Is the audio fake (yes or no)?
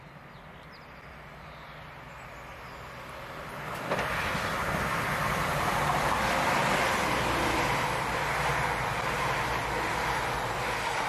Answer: no